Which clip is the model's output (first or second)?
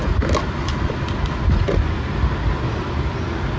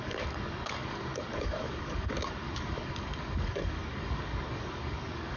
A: second